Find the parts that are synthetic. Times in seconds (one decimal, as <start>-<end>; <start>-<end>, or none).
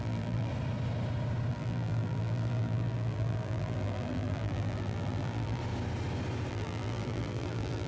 0.0-0.5; 1.5-5.6; 6.5-7.9